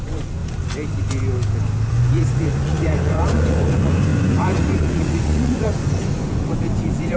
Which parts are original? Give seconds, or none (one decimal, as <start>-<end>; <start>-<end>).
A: 0.4-1.9